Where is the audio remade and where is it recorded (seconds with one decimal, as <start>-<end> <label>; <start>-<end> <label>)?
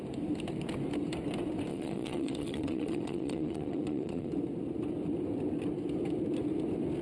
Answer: 0.0-1.7 recorded; 1.7-4.3 remade; 4.3-7.0 recorded